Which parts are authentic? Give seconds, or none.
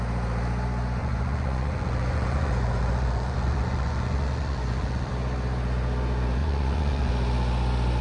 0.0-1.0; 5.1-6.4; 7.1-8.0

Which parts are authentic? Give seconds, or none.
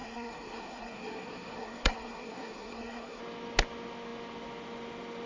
3.2-5.3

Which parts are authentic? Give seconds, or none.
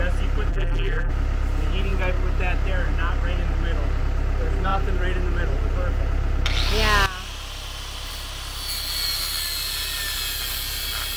0.0-0.5; 1.1-11.2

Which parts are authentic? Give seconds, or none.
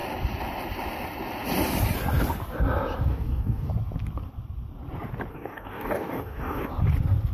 0.0-3.1; 3.7-5.3; 6.7-7.3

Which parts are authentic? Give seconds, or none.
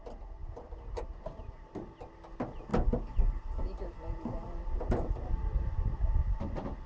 0.0-6.9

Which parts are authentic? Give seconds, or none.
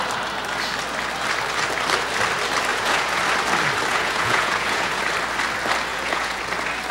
0.0-2.7; 3.2-3.9; 5.0-5.9; 6.4-6.9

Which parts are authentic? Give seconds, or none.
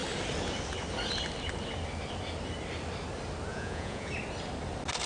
0.0-3.5; 4.1-5.1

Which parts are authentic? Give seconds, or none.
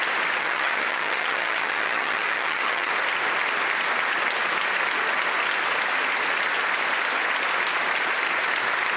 0.0-0.4; 2.9-9.0